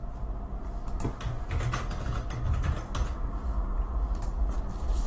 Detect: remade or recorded recorded